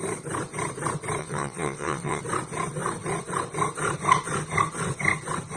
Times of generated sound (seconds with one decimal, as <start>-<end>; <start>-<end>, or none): 1.2-2.2